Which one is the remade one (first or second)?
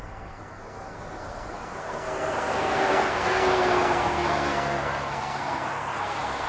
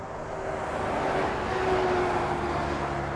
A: first